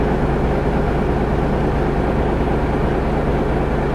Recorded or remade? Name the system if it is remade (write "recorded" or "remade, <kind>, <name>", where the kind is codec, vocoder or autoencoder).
recorded